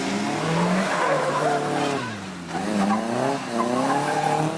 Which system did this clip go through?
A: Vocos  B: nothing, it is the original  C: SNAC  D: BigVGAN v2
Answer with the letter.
B